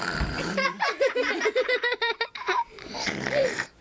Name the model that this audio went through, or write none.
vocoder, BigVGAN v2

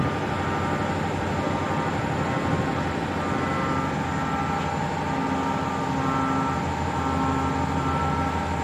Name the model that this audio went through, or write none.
none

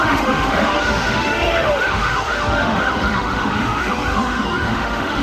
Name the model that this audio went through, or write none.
autoencoder, DAC-VAE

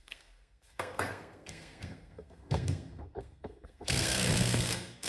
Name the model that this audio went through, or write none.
codec, SNAC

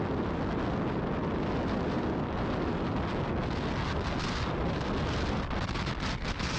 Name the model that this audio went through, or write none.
none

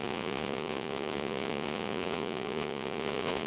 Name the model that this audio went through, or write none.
vocoder, Vocos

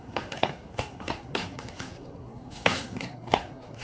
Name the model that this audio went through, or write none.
codec, SNAC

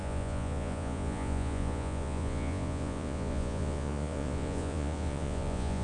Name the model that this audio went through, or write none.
vocoder, Vocos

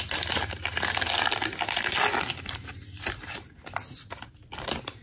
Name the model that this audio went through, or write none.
none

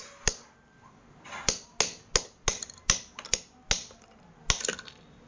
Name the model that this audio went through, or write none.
none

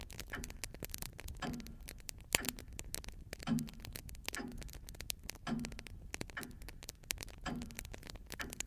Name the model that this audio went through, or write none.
none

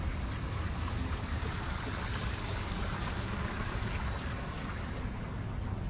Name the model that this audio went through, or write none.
none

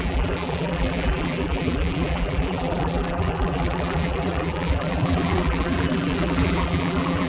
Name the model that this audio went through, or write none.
vocoder, BigVGAN v2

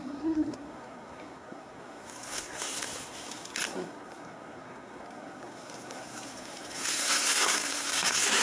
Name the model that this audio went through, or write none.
codec, SNAC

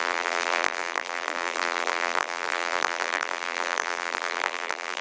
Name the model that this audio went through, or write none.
vocoder, BigVGAN v2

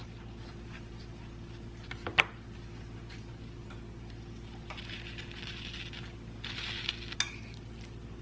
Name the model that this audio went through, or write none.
none